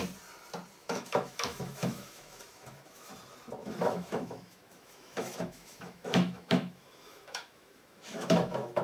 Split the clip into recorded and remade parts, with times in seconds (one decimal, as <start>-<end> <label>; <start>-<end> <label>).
0.0-0.8 recorded; 0.8-3.1 remade; 3.1-3.6 recorded; 3.6-8.8 remade